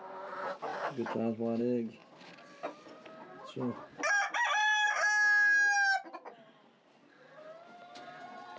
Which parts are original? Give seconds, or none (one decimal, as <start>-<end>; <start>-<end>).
0.0-8.6